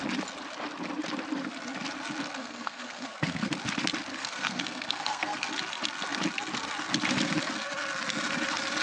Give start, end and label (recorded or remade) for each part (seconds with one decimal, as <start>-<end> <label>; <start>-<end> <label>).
0.0-2.4 recorded; 2.4-3.5 remade; 3.5-4.1 recorded; 4.1-5.5 remade; 5.5-8.8 recorded